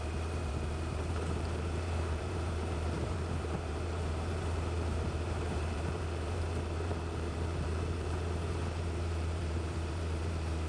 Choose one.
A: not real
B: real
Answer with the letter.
A